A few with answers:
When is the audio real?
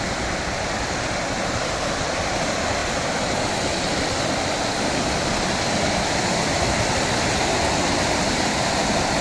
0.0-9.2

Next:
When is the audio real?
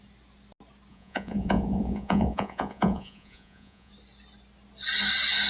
0.0-0.9; 3.9-5.5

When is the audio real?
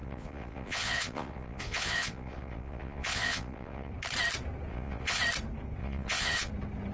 3.9-4.7; 5.2-5.8; 6.5-6.9